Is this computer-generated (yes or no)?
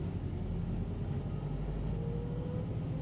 no